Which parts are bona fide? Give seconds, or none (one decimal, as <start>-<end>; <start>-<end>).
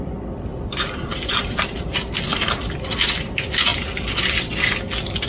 0.0-0.5; 1.6-2.3; 3.1-3.7; 4.5-5.3